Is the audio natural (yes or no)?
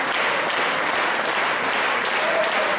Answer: yes